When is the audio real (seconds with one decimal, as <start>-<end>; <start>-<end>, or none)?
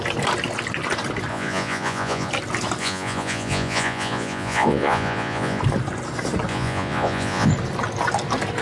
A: 0.0-1.3; 2.3-2.8; 5.6-6.5; 7.5-8.6